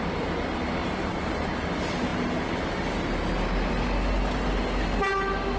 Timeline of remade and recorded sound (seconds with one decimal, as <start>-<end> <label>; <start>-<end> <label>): 0.0-0.8 recorded; 0.8-1.3 remade; 1.3-5.6 recorded